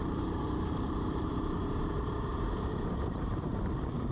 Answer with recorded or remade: remade